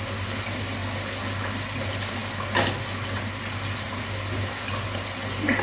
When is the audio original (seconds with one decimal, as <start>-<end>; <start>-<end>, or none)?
0.0-5.6

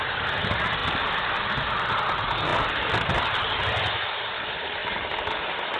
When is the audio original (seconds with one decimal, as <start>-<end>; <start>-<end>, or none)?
0.0-0.8; 1.7-2.5; 3.6-5.8

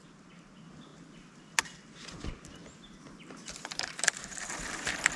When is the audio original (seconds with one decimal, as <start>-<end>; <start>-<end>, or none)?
0.0-2.6

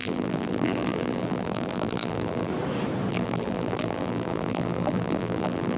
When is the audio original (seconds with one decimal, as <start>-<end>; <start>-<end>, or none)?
2.5-3.1

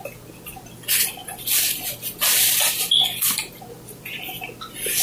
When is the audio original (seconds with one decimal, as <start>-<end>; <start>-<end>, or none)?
0.0-5.0

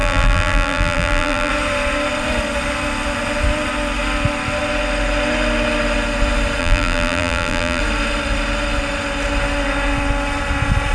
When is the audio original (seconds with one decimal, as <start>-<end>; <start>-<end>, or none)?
1.5-6.6; 7.8-10.9

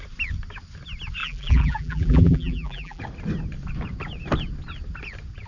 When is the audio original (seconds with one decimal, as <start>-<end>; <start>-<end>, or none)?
0.0-1.2; 3.0-5.5